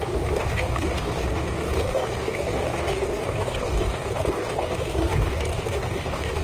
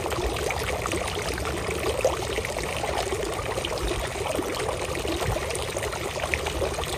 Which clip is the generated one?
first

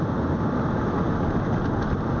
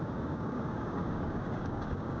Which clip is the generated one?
second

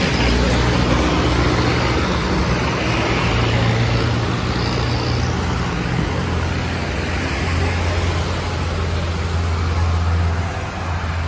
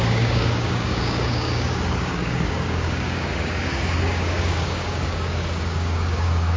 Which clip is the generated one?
second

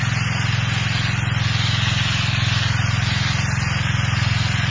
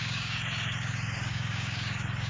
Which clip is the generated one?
second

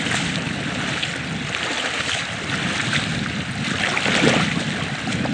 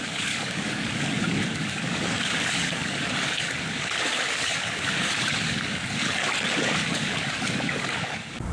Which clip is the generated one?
second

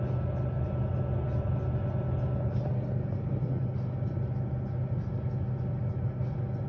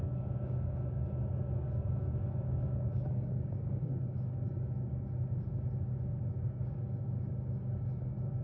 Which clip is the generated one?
second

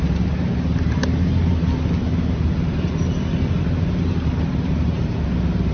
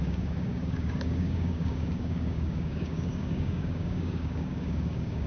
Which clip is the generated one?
second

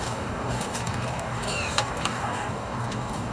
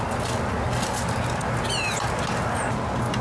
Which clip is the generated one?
first